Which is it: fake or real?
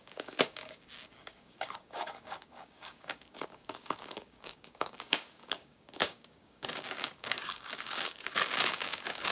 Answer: fake